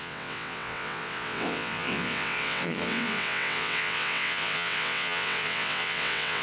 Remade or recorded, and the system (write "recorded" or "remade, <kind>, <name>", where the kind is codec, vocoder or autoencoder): remade, vocoder, WaveNeXt